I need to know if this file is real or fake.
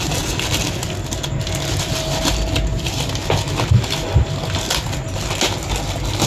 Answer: real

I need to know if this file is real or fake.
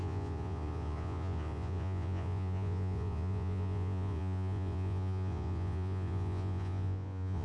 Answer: fake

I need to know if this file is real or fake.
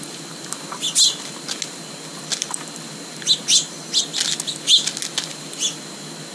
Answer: real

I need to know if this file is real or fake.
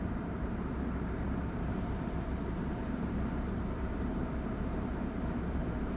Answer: fake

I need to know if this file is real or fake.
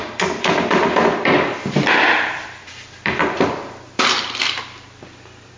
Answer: fake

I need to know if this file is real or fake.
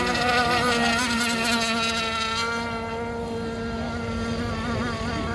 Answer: real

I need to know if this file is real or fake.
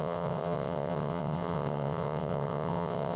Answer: fake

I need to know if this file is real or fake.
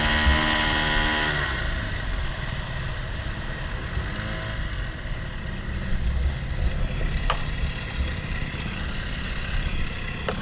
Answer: real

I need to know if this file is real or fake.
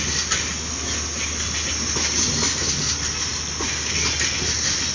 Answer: real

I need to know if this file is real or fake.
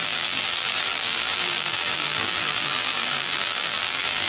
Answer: fake